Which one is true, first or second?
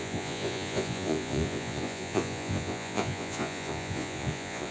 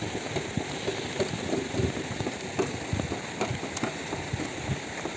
second